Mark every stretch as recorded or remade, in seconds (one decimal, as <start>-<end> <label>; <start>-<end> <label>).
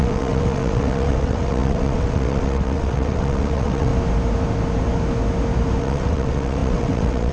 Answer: 0.0-3.9 remade; 3.9-5.8 recorded; 5.8-7.3 remade